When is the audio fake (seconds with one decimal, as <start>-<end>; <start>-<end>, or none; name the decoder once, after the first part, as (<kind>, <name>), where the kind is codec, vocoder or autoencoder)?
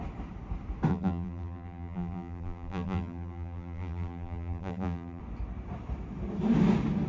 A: 0.9-5.2 (vocoder, BigVGAN v2)